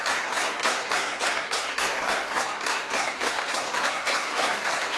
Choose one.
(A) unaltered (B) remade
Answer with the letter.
B